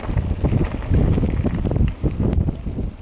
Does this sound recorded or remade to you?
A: recorded